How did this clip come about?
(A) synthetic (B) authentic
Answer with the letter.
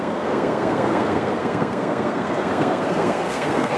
A